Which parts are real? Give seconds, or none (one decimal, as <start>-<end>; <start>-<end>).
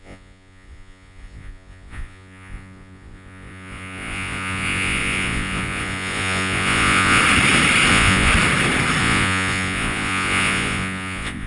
7.2-7.9; 8.3-9.0